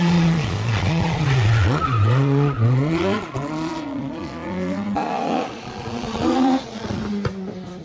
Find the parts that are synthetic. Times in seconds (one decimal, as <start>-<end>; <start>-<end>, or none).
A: 0.0-7.0